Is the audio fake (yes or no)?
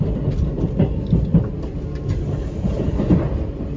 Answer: no